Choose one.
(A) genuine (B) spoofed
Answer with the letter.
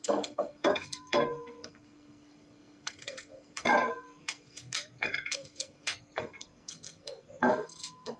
B